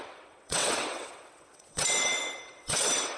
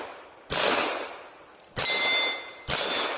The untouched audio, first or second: second